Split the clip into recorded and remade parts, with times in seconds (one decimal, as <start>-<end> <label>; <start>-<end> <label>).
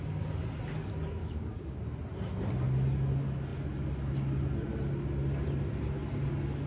0.0-1.2 recorded; 1.2-1.8 remade; 1.8-6.7 recorded